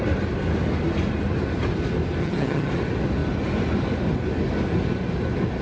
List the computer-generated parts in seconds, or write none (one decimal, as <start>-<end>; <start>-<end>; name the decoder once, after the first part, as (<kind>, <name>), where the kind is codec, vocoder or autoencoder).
2.2-2.7 (vocoder, HiFi-GAN)